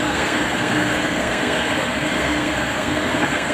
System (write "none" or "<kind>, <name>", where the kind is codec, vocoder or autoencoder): codec, SNAC